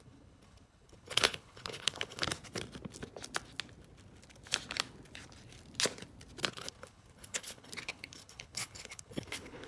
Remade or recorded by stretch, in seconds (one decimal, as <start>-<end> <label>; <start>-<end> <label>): 0.0-2.3 remade; 2.3-6.5 recorded; 6.5-9.7 remade